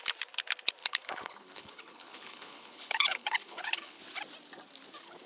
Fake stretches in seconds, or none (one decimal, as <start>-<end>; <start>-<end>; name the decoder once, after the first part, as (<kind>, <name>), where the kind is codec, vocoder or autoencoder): 0.8-4.0 (codec, HILCodec)